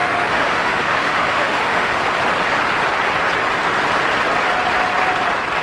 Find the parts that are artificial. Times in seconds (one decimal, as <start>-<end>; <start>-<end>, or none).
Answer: 0.0-2.0